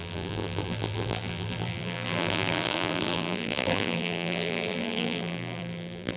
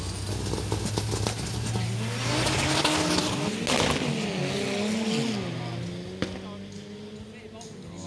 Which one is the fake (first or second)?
first